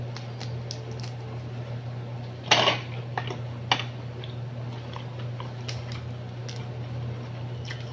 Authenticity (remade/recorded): recorded